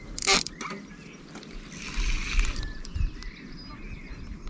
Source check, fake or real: real